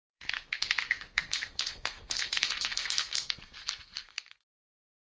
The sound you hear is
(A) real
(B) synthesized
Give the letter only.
B